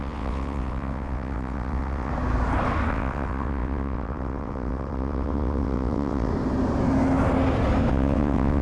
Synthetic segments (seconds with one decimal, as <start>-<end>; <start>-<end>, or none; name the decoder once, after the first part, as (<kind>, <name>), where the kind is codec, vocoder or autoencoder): 0.0-2.1 (vocoder, WaveNeXt); 2.9-6.3; 7.9-8.6